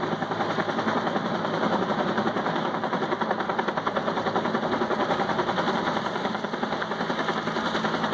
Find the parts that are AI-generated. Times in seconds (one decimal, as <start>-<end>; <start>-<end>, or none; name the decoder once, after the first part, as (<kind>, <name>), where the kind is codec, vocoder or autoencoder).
none